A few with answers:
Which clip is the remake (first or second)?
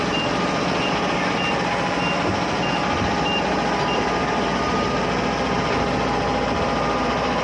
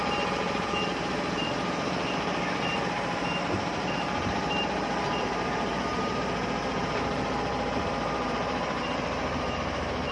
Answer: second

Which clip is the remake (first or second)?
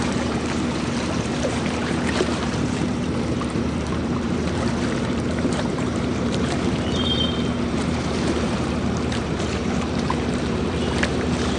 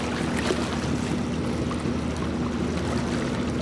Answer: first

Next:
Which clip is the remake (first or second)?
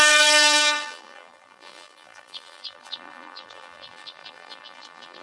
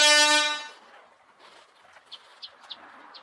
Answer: first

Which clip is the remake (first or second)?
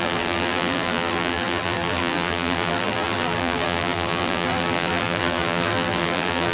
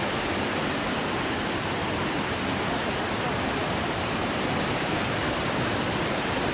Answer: first